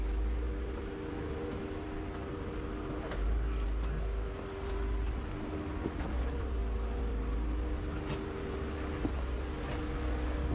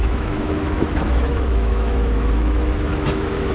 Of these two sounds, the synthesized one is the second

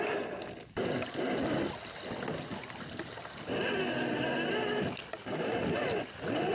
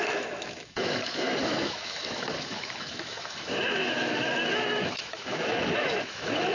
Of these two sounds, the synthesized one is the second